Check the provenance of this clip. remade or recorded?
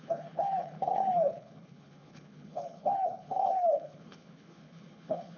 remade